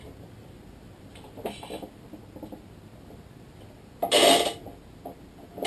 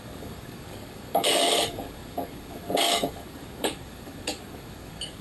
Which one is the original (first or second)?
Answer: first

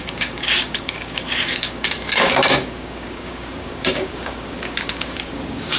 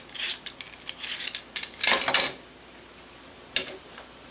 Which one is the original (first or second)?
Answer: second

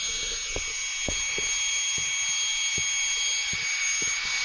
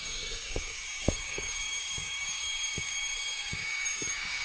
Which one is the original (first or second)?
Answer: first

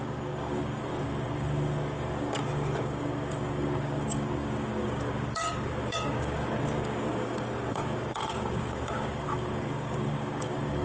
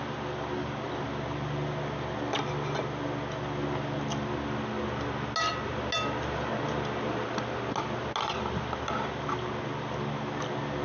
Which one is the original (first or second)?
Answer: second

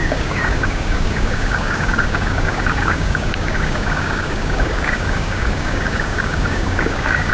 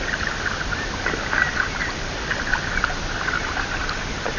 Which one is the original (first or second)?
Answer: second